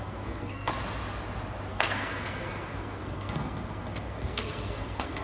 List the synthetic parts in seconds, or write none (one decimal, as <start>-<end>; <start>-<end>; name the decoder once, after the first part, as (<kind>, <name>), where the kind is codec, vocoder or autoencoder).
0.0-0.7 (codec, SNAC); 1.7-5.2